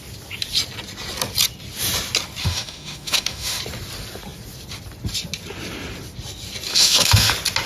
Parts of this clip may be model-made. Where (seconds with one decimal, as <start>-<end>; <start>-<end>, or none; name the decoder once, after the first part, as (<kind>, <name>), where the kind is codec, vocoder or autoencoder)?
2.4-3.6 (autoencoder, DAC-VAE); 6.7-7.3